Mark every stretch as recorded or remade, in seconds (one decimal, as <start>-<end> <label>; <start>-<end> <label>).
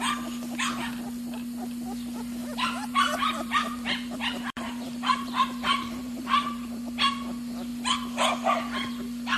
0.0-2.4 recorded; 2.4-6.8 remade; 6.8-9.4 recorded